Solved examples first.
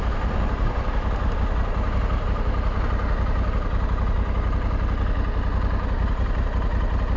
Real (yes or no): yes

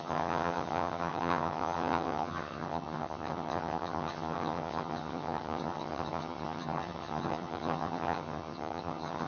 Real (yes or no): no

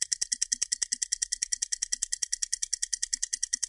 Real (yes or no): yes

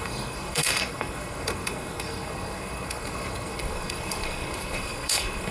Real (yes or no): no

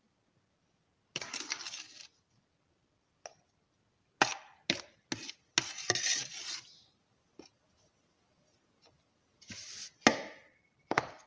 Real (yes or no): yes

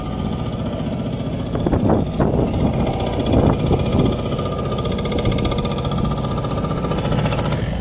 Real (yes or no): yes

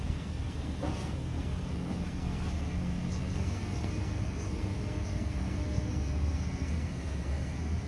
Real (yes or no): no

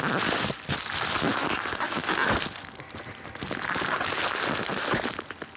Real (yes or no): yes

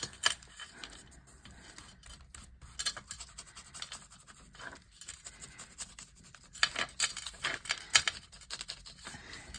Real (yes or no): yes